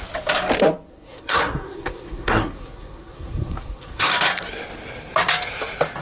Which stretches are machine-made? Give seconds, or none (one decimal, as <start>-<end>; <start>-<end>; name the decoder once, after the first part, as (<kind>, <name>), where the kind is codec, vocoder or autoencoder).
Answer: 0.9-4.1 (codec, SNAC)